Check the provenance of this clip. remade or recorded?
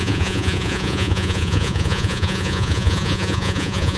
remade